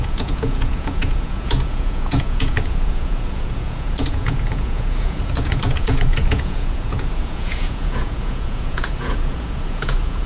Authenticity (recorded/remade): remade